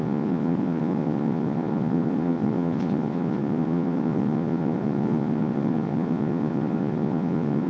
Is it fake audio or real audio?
fake